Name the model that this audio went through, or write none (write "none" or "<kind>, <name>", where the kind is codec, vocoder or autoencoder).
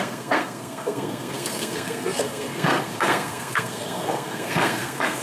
codec, SNAC